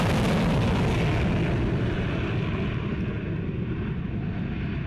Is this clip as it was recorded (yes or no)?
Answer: yes